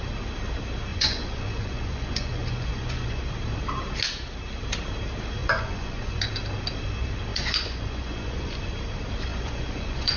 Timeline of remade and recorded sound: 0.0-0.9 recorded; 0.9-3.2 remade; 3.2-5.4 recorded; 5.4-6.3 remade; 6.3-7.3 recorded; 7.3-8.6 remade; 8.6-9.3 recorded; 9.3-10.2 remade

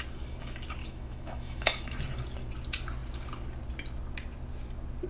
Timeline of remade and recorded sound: 0.0-0.8 recorded; 0.8-2.0 remade; 2.0-5.1 recorded